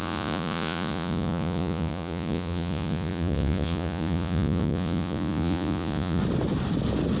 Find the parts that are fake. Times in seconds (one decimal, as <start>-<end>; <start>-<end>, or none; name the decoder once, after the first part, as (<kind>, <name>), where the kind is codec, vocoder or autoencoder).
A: 0.0-6.2 (vocoder, Vocos)